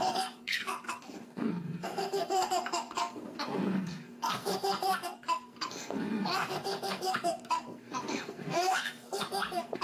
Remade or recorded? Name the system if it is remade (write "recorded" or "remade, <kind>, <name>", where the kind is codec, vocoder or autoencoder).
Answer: remade, codec, SNAC